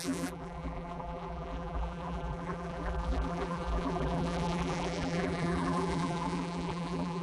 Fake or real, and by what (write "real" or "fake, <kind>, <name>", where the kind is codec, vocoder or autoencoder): fake, vocoder, BigVGAN v2